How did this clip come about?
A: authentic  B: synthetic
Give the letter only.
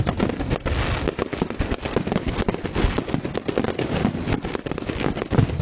A